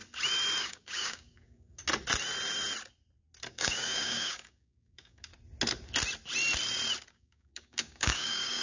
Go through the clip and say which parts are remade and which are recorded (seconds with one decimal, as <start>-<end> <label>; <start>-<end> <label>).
0.0-0.6 recorded; 0.6-1.8 remade; 1.8-3.5 recorded; 3.5-5.3 remade; 5.3-7.1 recorded; 7.1-8.6 remade